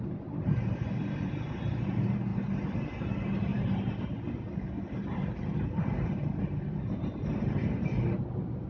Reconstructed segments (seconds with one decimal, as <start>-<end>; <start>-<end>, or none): 0.0-2.3; 3.0-8.7